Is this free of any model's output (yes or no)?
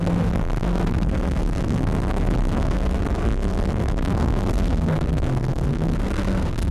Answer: no